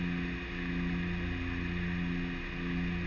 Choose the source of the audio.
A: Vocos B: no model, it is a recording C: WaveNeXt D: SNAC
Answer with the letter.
B